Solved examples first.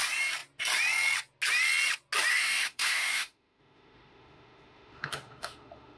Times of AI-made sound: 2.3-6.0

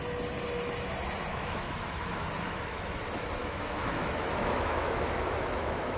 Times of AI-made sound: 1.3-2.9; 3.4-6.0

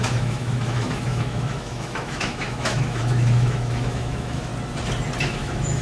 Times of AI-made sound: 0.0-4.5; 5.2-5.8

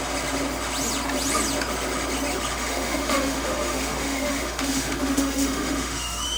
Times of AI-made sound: 2.5-6.4

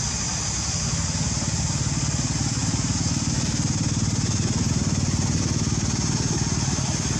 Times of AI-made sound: none

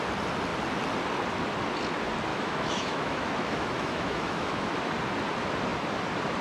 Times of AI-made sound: 2.3-4.7

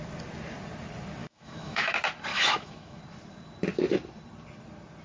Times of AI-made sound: 1.2-1.9; 2.3-3.0